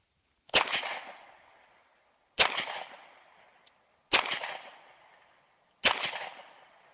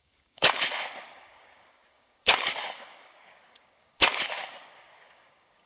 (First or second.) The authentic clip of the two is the first